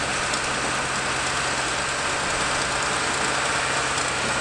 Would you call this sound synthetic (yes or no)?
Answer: no